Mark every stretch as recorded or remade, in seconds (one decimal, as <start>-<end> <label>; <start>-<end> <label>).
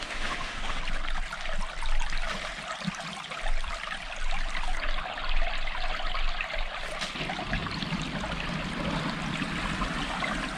0.0-0.8 remade; 0.8-10.6 recorded